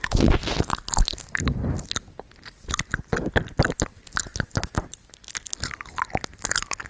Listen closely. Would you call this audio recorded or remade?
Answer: recorded